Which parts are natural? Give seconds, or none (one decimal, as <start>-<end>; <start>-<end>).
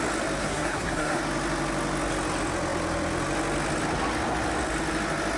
0.0-0.4; 1.2-5.4